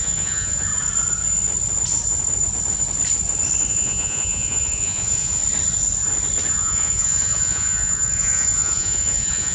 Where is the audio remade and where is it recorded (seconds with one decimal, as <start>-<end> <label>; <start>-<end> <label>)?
0.0-0.7 remade; 0.7-3.7 recorded; 3.7-5.4 remade; 5.4-6.5 recorded; 6.5-9.5 remade